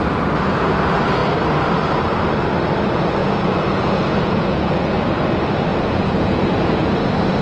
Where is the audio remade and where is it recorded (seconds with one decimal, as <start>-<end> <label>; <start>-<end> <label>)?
0.0-3.2 recorded; 3.2-5.1 remade; 5.1-5.7 recorded; 5.7-6.9 remade; 6.9-7.4 recorded